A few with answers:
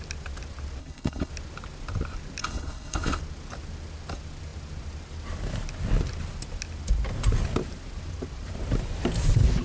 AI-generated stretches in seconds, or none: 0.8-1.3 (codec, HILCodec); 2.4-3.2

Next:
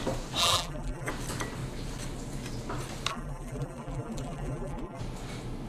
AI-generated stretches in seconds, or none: 0.4-1.1 (vocoder, BigVGAN v2); 3.1-5.0

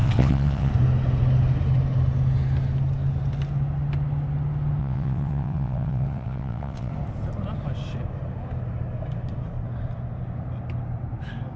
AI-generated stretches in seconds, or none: 0.0-0.7 (vocoder, WaveNeXt); 4.8-6.9

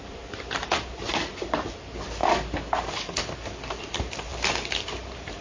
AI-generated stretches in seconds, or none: 0.0-2.2 (vocoder, BigVGAN v2); 3.8-4.3; 4.8-5.4

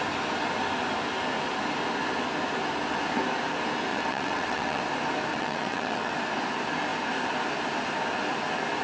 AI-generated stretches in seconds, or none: 3.9-4.8 (vocoder, WaveNeXt); 5.3-6.1